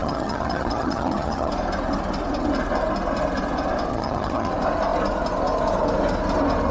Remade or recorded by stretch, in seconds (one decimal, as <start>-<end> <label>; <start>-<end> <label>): 0.0-1.5 remade; 1.5-3.9 recorded; 3.9-4.5 remade; 4.5-6.7 recorded

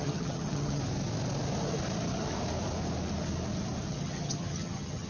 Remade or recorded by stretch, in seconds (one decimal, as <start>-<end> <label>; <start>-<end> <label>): 0.0-0.8 remade; 0.8-3.9 recorded; 3.9-5.1 remade

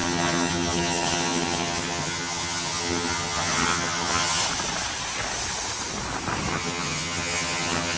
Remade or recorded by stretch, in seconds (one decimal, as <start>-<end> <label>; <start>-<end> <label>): 0.0-4.4 remade; 4.4-6.5 recorded; 6.5-8.0 remade

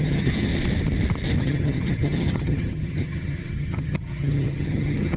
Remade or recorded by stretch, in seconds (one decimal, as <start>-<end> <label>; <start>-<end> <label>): 0.0-0.5 remade; 0.5-1.4 recorded; 1.4-5.2 remade

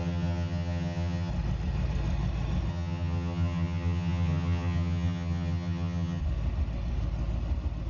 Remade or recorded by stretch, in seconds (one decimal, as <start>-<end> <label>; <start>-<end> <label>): 0.0-1.3 remade; 1.3-2.7 recorded; 2.7-6.2 remade; 6.2-7.9 recorded

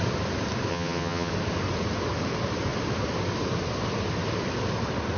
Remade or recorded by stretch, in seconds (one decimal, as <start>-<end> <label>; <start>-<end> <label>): 0.0-0.7 recorded; 0.7-1.3 remade; 1.3-5.2 recorded

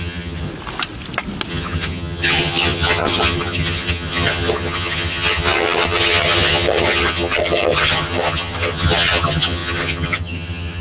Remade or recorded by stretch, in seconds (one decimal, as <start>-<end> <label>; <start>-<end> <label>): 0.0-0.5 remade; 0.5-1.5 recorded; 1.5-10.8 remade